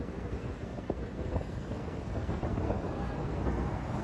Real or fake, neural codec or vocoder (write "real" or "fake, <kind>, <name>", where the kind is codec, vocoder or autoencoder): fake, codec, SNAC